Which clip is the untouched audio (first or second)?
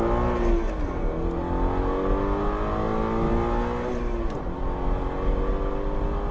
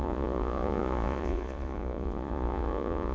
first